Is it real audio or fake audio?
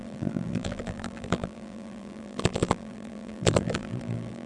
fake